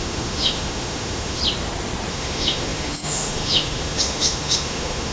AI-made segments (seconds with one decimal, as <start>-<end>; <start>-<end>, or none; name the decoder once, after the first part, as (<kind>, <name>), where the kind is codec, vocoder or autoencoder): 0.0-1.4 (autoencoder, DAC-VAE); 2.1-5.1